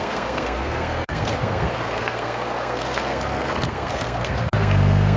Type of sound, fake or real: fake